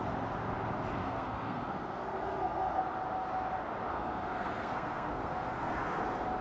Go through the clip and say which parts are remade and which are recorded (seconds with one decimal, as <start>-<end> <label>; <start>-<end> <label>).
0.0-1.0 recorded; 1.0-2.8 remade; 2.8-3.9 recorded; 3.9-6.0 remade; 6.0-6.4 recorded